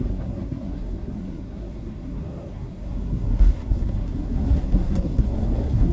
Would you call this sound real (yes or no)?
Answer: no